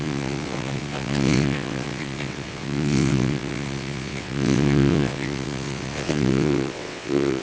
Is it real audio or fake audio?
fake